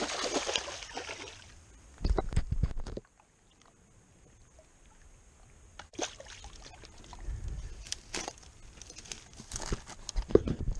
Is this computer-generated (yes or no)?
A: no